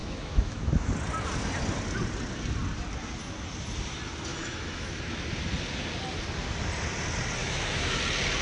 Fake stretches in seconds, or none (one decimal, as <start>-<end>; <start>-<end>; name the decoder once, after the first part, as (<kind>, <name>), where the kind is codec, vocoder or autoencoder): 0.0-0.9 (autoencoder, DAC-VAE); 4.3-5.0; 7.4-8.0